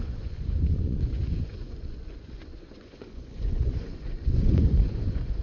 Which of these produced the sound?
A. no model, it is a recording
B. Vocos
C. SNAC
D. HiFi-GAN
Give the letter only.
B